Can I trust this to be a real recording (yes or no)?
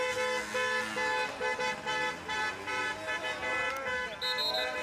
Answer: yes